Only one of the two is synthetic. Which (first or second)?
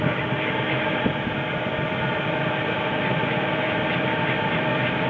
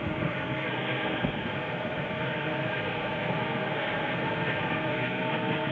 second